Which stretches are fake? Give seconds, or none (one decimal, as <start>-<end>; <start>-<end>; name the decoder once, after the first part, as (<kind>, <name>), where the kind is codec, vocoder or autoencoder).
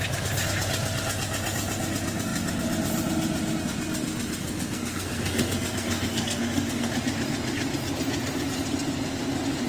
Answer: 4.4-6.9 (codec, SNAC)